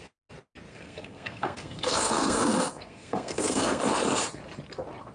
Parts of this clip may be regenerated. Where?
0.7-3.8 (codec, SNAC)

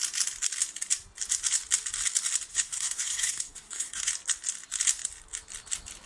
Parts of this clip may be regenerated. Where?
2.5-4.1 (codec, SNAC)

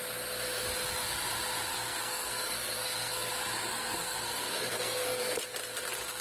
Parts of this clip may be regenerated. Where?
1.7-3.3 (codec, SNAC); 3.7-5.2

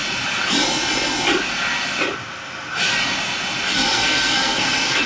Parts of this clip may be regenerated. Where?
3.7-5.1 (codec, SNAC)

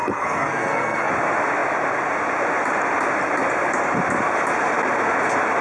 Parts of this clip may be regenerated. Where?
0.0-1.1 (codec, SNAC)

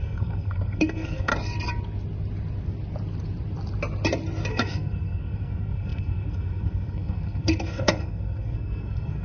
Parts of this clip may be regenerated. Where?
0.0-1.3 (codec, SNAC); 4.5-9.2

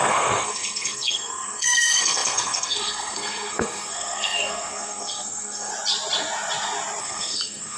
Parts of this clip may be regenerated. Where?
0.0-5.7 (codec, SNAC); 7.0-7.8